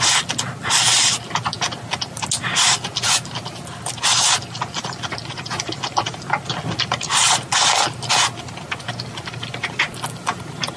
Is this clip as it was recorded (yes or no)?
yes